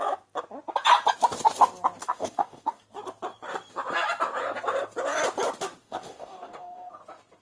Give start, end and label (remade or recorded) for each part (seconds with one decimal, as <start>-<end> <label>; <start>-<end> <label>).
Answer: 0.0-2.0 recorded; 2.0-2.8 remade; 2.8-5.8 recorded; 5.8-6.9 remade; 6.9-7.4 recorded